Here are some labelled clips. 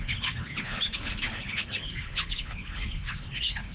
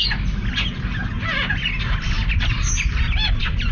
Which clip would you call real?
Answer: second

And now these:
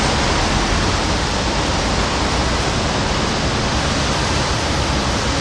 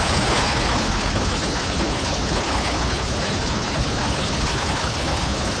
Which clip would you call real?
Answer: first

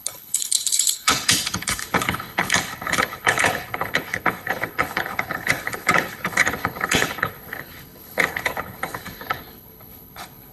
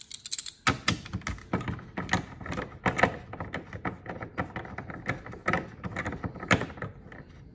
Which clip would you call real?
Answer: second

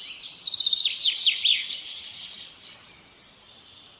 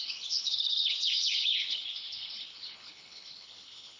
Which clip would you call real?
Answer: first